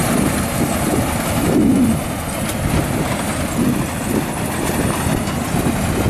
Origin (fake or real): real